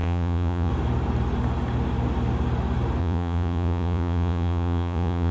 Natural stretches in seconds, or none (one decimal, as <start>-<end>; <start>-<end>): 0.7-3.0